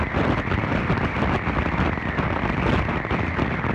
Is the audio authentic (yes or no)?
no